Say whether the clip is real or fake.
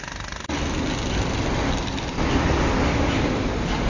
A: real